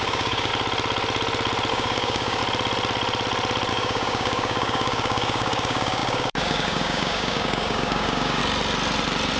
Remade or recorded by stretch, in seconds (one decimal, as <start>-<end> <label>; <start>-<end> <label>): 0.0-0.5 remade; 0.5-1.7 recorded; 1.7-2.4 remade; 2.4-3.7 recorded; 3.7-8.4 remade; 8.4-9.4 recorded